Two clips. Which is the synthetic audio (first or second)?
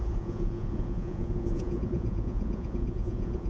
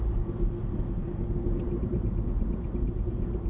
first